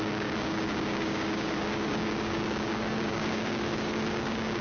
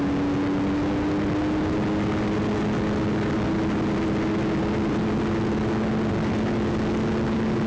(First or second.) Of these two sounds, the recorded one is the second